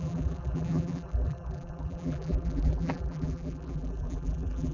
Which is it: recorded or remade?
remade